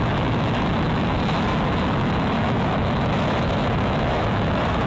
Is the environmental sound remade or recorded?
remade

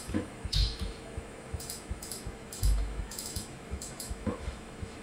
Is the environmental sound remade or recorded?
remade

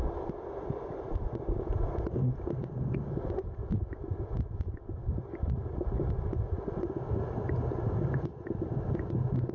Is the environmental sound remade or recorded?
recorded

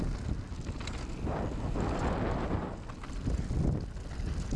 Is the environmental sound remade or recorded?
recorded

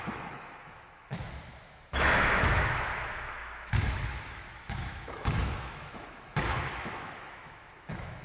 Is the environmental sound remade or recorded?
remade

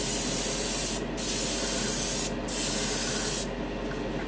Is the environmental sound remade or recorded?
recorded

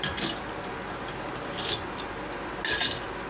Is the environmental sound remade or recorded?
recorded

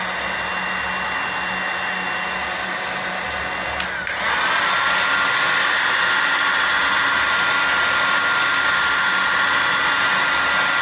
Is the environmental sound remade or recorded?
recorded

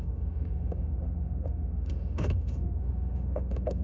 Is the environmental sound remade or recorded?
remade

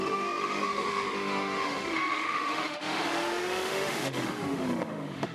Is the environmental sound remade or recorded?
remade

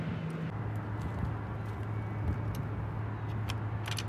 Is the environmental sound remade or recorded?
recorded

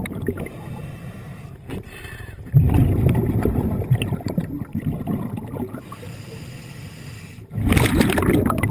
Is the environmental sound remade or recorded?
recorded